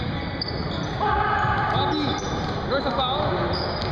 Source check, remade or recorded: recorded